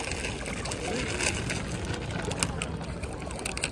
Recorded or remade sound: recorded